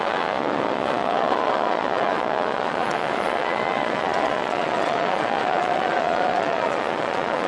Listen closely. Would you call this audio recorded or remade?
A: remade